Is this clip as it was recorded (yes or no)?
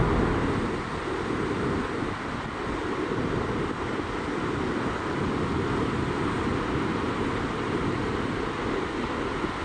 yes